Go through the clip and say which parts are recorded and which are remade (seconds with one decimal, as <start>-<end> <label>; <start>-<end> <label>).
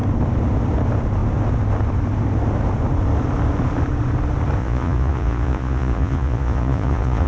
0.0-4.6 recorded; 4.6-7.3 remade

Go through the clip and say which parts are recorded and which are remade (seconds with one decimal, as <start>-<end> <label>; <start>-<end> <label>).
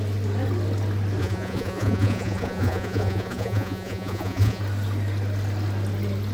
0.0-1.2 recorded; 1.2-4.6 remade; 4.6-6.3 recorded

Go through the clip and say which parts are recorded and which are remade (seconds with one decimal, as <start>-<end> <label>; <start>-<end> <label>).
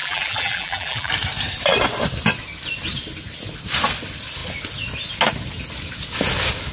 0.0-1.1 remade; 1.1-6.7 recorded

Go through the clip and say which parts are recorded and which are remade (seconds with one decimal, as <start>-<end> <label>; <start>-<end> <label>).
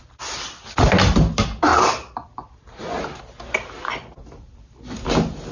0.0-5.5 recorded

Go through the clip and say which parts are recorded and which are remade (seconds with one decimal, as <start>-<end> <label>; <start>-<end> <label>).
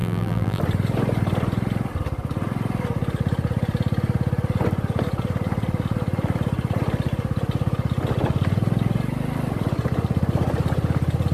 0.0-0.6 remade; 0.6-11.3 recorded